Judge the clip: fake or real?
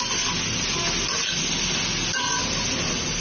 real